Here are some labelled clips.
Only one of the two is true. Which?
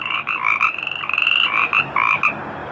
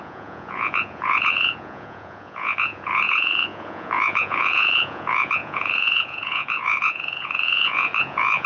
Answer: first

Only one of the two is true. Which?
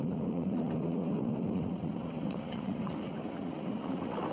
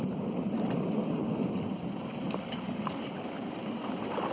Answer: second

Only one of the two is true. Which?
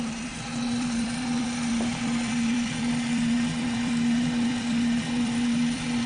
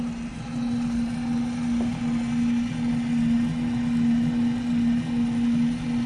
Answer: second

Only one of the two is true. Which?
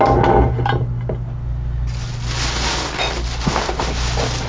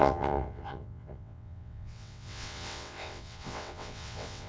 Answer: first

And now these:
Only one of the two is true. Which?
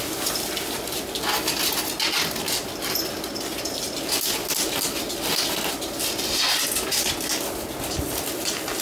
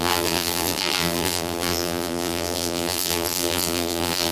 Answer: first